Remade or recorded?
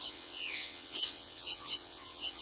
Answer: remade